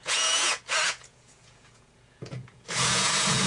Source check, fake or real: fake